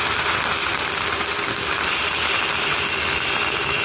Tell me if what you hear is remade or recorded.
recorded